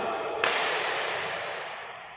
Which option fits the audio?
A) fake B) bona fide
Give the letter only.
A